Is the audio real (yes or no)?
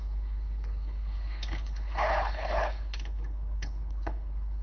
no